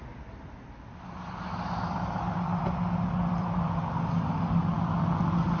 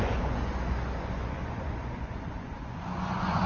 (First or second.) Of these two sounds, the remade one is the second